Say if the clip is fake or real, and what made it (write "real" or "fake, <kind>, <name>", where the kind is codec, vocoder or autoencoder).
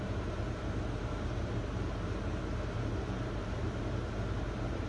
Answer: fake, vocoder, BigVGAN v2